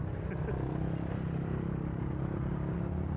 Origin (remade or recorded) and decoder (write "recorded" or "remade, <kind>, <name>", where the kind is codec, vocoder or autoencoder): recorded